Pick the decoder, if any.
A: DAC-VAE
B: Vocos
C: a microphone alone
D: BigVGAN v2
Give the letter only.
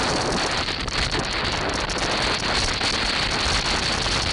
C